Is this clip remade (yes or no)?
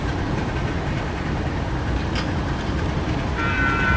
yes